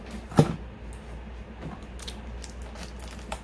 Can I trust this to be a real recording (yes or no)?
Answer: yes